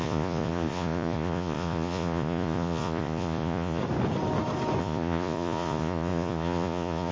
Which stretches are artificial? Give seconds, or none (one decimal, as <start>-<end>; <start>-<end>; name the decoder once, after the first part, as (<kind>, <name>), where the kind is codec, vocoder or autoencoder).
0.0-3.8 (vocoder, Vocos); 4.8-7.1